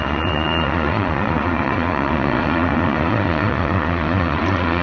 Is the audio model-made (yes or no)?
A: yes